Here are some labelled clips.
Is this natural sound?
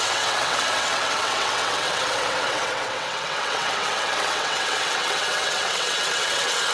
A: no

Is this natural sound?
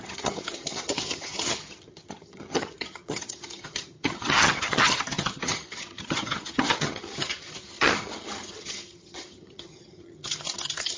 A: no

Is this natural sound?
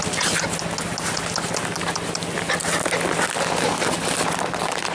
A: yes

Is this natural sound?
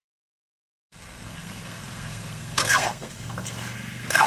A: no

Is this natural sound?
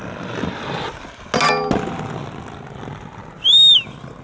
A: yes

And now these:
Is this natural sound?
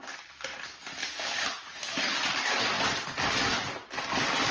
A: yes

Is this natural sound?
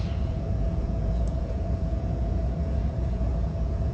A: no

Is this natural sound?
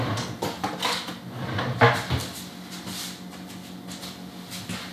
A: yes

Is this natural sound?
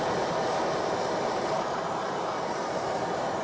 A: no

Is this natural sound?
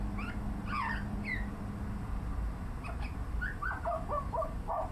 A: yes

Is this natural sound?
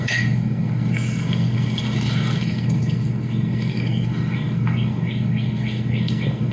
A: no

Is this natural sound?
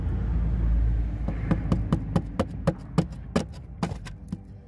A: yes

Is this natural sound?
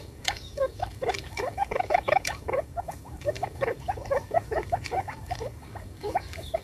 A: no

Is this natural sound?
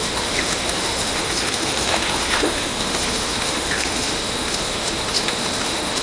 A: no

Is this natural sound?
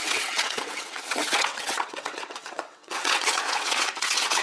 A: no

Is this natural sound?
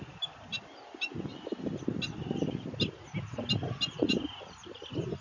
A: yes